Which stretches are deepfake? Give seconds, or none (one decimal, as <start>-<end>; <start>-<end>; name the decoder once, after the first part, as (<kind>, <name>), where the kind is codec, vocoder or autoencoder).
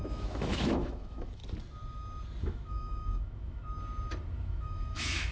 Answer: 0.0-1.4 (autoencoder, DAC-VAE); 2.4-3.6; 4.4-5.3